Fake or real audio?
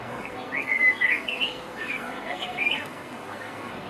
fake